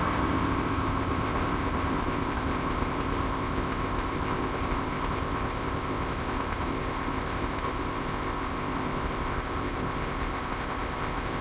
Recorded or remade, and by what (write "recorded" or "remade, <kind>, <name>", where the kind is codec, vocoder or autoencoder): remade, codec, ZipCodec